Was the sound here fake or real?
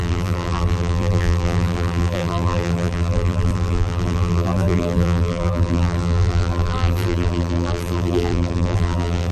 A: fake